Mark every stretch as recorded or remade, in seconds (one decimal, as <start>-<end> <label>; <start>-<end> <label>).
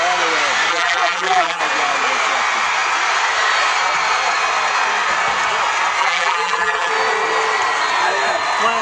0.0-0.7 recorded; 0.7-1.6 remade; 1.6-6.0 recorded; 6.0-6.9 remade; 6.9-8.8 recorded